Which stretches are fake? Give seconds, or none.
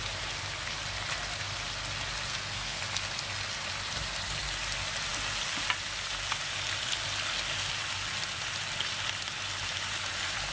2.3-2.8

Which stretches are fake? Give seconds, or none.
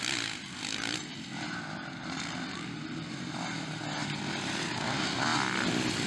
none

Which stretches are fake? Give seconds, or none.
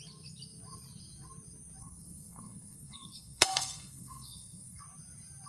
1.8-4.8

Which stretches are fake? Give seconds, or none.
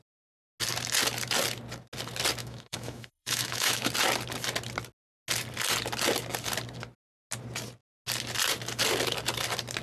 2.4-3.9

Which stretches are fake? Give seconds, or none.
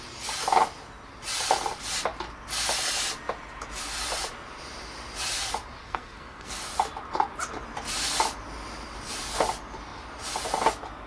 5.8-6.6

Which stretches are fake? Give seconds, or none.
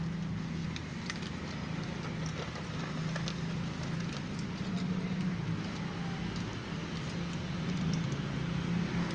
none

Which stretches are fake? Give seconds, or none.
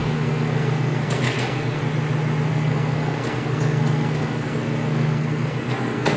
0.0-1.8; 2.5-6.2